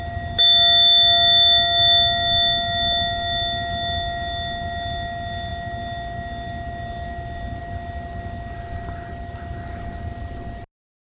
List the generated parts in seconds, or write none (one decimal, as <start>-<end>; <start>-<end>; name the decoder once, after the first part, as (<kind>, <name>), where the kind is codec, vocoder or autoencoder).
none